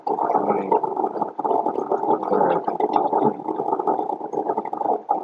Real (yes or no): yes